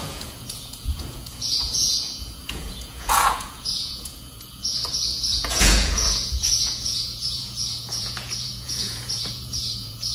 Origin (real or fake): fake